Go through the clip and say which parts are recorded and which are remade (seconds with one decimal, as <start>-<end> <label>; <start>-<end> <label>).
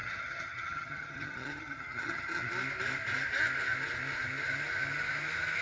0.0-2.5 remade; 2.5-5.6 recorded